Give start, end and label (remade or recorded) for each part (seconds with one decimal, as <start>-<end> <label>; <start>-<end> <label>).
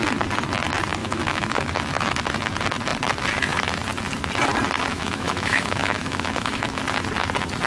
0.0-1.0 recorded; 1.0-1.7 remade; 1.7-4.9 recorded; 4.9-6.8 remade; 6.8-7.7 recorded